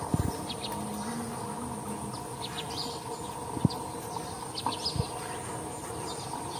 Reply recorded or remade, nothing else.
recorded